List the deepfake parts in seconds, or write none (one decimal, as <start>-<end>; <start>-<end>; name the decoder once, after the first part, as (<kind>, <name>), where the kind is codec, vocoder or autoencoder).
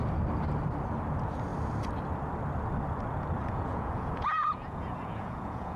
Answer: 3.4-5.8 (vocoder, Vocos)